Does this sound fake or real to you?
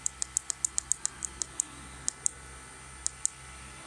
real